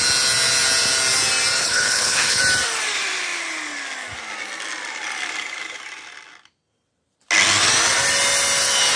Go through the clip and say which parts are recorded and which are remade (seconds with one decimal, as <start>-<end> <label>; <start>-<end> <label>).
0.0-1.6 recorded; 1.6-2.4 remade; 2.4-9.0 recorded